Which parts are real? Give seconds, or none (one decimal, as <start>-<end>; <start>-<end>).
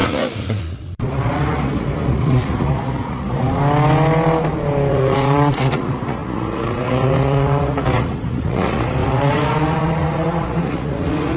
3.6-4.9